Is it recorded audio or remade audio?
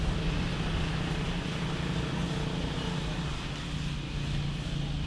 recorded